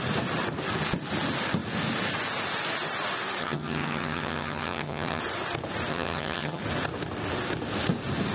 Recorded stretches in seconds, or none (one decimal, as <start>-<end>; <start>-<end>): 0.0-3.4; 5.2-5.9; 6.6-8.3